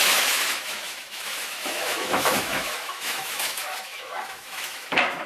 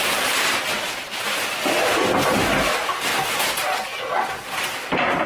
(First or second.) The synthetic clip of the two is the first